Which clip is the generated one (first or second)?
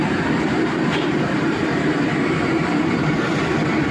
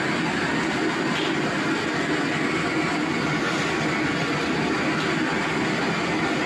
first